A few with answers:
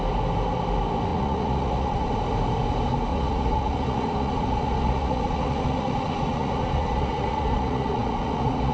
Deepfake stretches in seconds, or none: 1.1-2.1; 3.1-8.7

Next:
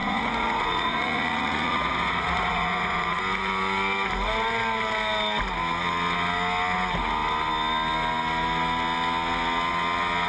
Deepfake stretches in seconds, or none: 0.0-3.2

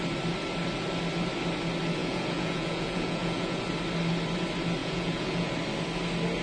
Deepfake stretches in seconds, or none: 2.0-3.6; 4.8-5.5

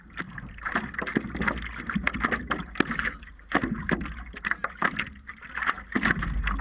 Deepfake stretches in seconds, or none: none